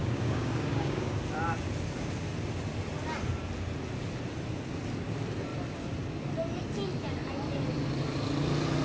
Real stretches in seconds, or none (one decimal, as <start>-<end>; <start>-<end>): 1.2-8.8